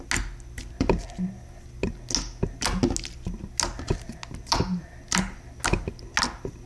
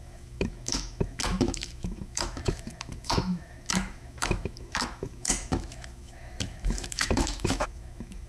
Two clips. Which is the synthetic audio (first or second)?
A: second